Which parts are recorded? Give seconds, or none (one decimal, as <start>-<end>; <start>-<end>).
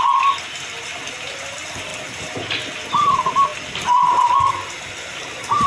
0.0-5.7